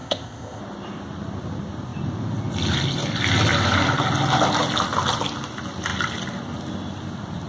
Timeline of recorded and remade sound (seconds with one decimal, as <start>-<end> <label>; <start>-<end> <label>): 0.0-0.6 remade; 0.6-7.5 recorded